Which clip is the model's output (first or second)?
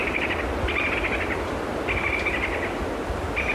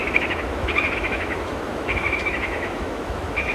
second